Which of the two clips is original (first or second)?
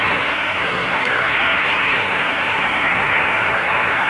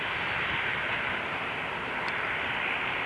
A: second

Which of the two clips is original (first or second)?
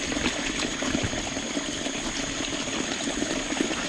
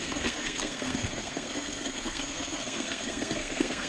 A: first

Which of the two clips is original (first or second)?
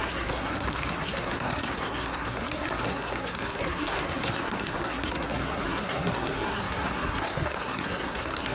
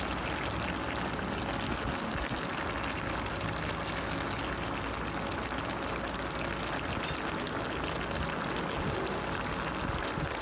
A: second